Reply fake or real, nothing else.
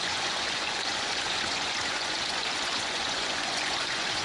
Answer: fake